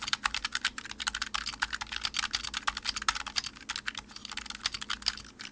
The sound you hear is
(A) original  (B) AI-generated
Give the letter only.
A